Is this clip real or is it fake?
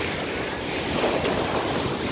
real